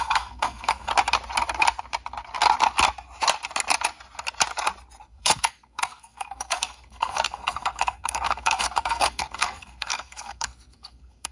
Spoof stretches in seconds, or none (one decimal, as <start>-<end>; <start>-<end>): 0.0-0.9; 5.0-11.3